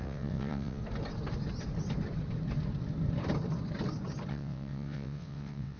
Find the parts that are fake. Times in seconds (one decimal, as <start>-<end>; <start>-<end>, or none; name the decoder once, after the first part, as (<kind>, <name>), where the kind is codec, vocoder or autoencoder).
0.0-0.8 (vocoder, WaveNeXt); 4.3-5.8